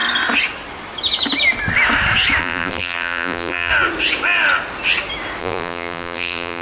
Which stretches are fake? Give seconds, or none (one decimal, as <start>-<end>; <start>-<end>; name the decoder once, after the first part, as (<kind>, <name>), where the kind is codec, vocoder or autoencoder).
2.4-3.7 (vocoder, BigVGAN v2); 5.4-6.6